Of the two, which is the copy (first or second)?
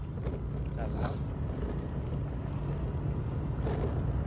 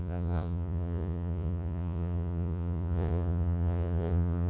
second